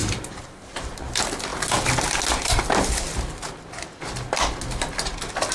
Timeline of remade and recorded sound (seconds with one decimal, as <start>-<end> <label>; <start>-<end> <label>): 0.0-0.9 remade; 0.9-5.5 recorded